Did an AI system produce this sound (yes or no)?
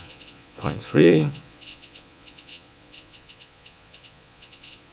yes